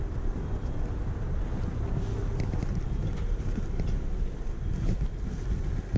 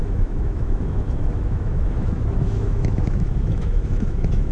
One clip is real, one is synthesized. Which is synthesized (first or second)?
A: second